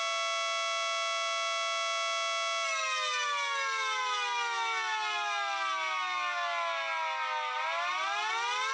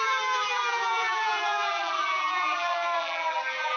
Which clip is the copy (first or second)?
second